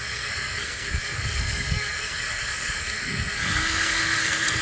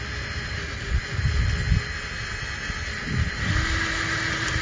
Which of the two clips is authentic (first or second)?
second